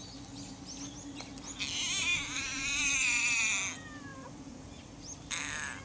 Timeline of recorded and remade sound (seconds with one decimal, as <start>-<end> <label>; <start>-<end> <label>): 0.0-2.1 recorded; 2.1-3.2 remade; 3.2-4.1 recorded; 4.1-5.8 remade